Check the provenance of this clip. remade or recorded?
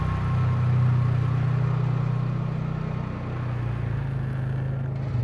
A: recorded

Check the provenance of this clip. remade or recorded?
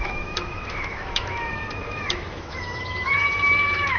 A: remade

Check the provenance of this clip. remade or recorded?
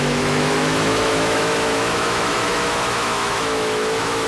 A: remade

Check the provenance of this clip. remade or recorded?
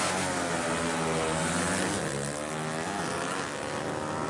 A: recorded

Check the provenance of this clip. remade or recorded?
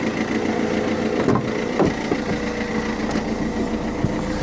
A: recorded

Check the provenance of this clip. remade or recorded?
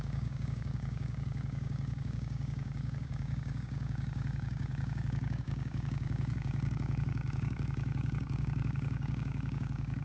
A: remade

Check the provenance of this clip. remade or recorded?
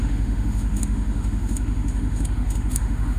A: remade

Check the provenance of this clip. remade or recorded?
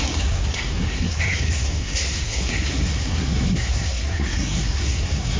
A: remade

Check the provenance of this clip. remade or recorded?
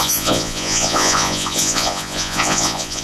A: remade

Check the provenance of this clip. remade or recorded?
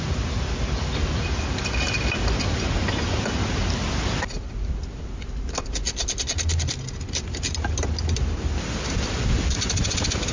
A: recorded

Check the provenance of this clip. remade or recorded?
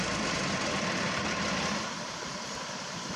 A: recorded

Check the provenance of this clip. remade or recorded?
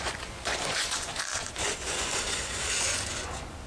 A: remade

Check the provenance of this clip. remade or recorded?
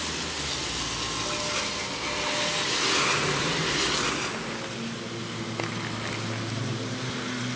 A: recorded